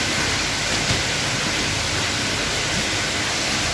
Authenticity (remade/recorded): recorded